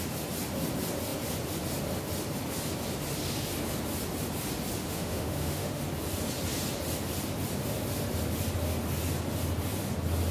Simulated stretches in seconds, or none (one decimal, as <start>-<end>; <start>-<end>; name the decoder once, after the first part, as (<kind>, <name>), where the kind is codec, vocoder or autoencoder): 4.8-5.8 (autoencoder, DAC-VAE)